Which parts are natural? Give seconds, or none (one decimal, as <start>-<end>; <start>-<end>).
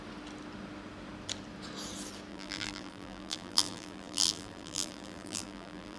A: 0.0-2.3